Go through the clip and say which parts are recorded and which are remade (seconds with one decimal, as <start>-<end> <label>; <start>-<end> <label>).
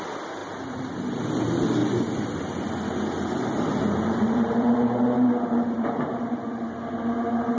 0.0-0.4 recorded; 0.4-1.3 remade; 1.3-1.8 recorded; 1.8-6.4 remade; 6.4-7.6 recorded